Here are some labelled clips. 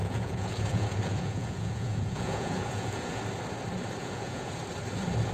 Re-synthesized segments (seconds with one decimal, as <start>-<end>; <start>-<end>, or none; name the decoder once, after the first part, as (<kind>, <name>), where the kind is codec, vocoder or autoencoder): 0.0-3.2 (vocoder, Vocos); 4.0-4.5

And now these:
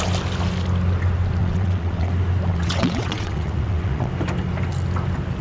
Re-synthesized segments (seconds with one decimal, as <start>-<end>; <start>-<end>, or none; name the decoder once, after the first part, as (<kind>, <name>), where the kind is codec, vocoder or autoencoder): 1.4-2.1 (vocoder, WaveNeXt); 2.5-4.1

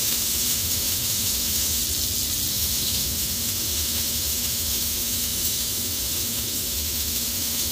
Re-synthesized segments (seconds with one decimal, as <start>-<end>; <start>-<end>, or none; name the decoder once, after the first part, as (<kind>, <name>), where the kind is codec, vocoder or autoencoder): 0.0-1.8 (autoencoder, DAC-VAE); 2.5-7.7

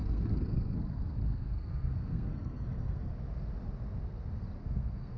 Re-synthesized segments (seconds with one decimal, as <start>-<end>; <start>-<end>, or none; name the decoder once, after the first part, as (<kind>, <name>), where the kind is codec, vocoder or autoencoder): 0.0-3.1 (codec, SNAC); 4.6-5.2

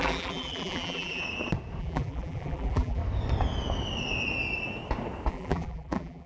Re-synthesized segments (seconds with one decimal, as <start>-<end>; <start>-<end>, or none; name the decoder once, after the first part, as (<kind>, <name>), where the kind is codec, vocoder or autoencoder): 0.0-1.2 (vocoder, BigVGAN v2); 1.8-3.0; 5.3-6.3

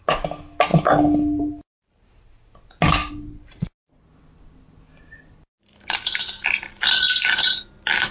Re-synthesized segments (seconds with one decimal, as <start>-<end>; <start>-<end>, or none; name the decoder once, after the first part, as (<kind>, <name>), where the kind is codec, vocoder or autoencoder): none

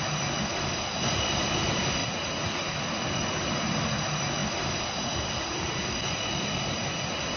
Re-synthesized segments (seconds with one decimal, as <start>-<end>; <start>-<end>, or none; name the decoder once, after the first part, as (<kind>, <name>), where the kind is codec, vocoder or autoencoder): 2.0-2.8 (vocoder, Vocos)

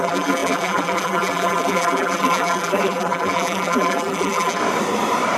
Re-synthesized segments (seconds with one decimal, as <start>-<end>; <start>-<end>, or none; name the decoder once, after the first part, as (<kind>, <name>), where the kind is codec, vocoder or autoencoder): 0.0-4.6 (vocoder, BigVGAN v2)